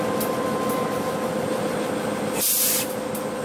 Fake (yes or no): no